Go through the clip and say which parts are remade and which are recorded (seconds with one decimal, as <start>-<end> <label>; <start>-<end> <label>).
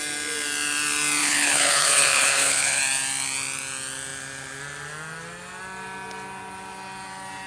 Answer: 0.0-1.2 recorded; 1.2-2.8 remade; 2.8-7.5 recorded